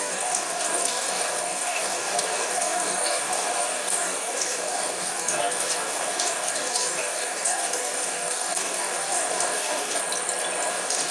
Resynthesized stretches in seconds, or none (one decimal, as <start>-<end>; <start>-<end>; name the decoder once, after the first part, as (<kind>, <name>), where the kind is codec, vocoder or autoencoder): 0.0-10.0 (codec, DAC); 10.7-11.1